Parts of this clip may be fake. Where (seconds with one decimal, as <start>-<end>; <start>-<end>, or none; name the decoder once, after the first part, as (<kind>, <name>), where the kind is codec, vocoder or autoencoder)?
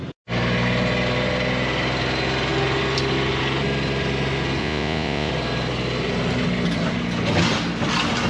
4.6-5.3 (vocoder, Vocos)